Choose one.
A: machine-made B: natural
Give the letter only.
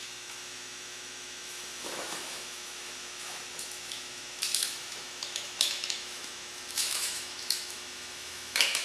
A